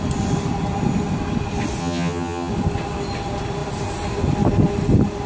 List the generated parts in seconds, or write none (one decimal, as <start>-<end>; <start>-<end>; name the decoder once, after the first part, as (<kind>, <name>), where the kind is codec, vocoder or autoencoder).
1.8-2.5 (vocoder, HiFi-GAN)